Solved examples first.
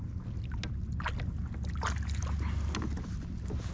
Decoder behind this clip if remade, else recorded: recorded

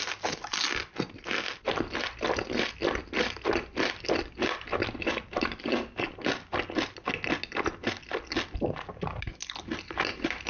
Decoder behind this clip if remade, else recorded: recorded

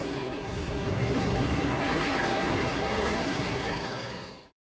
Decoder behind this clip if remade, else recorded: remade, codec, SNAC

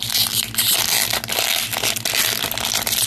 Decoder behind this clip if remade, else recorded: recorded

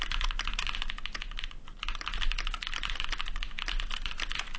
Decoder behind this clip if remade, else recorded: recorded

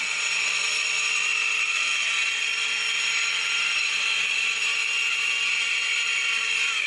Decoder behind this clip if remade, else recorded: recorded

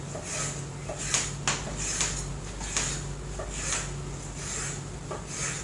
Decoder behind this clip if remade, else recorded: recorded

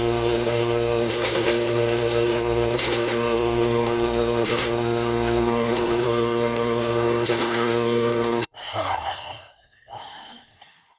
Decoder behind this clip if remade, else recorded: remade, codec, SNAC